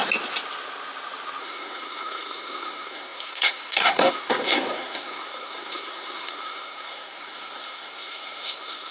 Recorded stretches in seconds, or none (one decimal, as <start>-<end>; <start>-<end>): 0.0-1.4